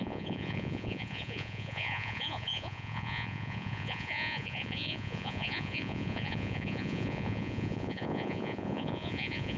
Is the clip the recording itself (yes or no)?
no